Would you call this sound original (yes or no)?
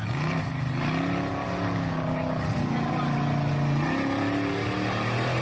yes